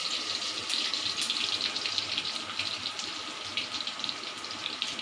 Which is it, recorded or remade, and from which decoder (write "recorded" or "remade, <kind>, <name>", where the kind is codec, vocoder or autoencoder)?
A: recorded